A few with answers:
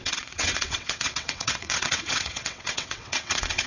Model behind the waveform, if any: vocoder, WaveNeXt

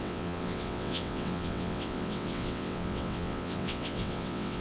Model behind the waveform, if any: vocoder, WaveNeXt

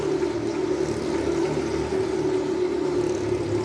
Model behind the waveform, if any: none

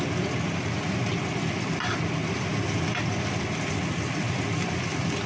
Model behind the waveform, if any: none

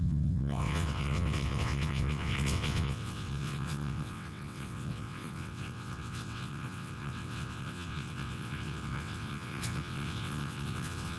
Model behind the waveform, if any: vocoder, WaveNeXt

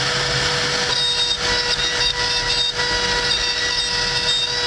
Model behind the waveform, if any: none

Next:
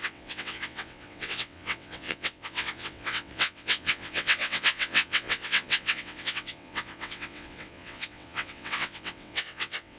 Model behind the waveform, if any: vocoder, WaveNeXt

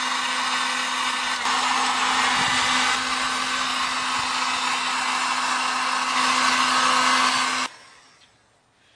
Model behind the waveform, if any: none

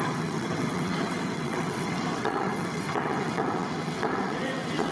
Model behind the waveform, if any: vocoder, WaveNeXt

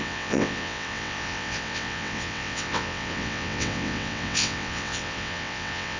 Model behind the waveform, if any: vocoder, WaveNeXt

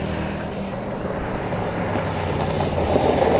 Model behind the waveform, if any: none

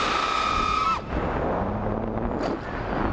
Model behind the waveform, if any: none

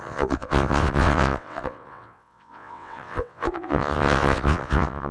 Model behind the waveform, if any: vocoder, WaveNeXt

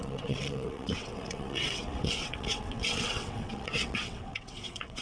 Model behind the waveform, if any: vocoder, WaveNeXt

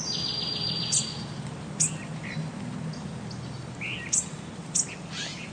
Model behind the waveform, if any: none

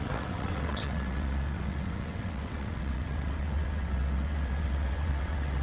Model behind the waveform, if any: vocoder, WaveNeXt